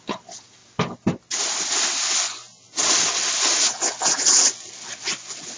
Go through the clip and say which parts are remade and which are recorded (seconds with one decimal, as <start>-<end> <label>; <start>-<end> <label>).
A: 0.0-5.6 recorded